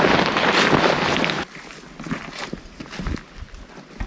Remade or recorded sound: recorded